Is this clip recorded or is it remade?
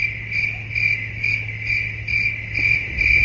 recorded